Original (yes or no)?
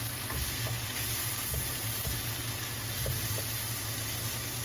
yes